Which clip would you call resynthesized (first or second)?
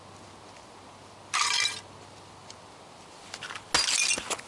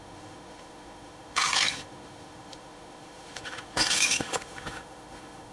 second